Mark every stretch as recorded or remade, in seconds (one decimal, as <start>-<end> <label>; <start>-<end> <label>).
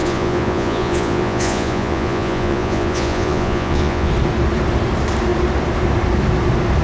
0.0-4.1 remade; 4.1-6.8 recorded